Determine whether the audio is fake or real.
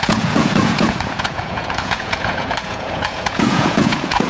fake